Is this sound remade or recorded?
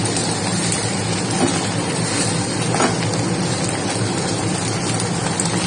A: recorded